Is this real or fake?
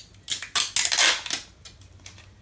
real